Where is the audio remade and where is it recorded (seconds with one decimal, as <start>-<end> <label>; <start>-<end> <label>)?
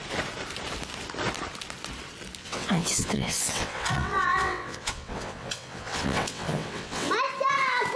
0.0-2.4 recorded; 2.4-7.1 remade; 7.1-8.0 recorded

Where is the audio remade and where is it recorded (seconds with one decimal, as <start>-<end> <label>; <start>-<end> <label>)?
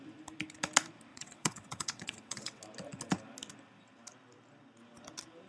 0.0-1.1 recorded; 1.1-2.6 remade; 2.6-5.5 recorded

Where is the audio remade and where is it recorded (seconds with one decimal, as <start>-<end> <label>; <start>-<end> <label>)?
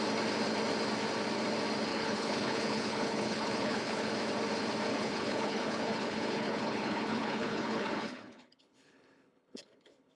0.0-1.9 recorded; 1.9-4.1 remade; 4.1-4.9 recorded; 4.9-10.1 remade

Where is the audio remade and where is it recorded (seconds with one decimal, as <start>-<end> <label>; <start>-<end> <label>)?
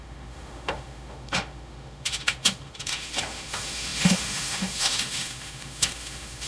0.0-6.5 remade